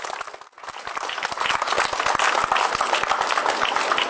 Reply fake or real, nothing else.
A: real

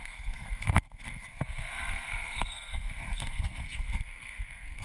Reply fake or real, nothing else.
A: fake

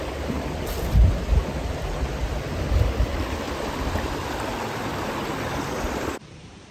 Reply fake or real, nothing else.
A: real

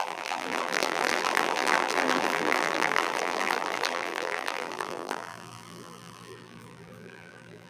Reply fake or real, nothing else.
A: fake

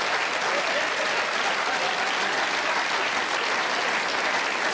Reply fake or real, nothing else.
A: real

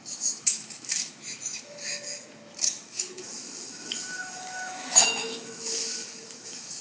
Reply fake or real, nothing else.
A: fake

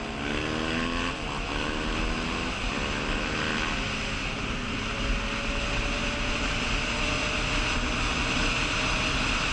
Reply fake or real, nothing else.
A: real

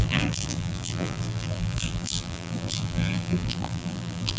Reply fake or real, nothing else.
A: fake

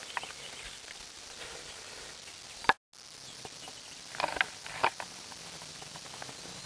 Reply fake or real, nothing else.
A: real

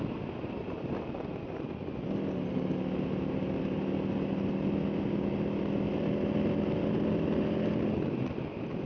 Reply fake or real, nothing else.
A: real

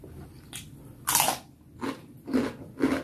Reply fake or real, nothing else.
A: real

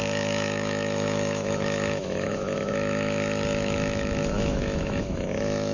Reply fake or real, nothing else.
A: fake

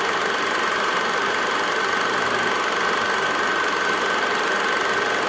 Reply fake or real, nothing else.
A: real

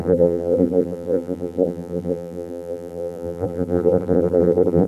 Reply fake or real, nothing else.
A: fake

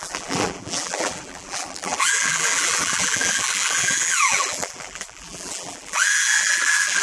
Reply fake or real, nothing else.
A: fake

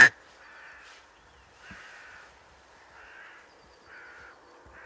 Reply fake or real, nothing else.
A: fake